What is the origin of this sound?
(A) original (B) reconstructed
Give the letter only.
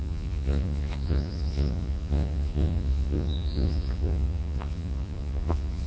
B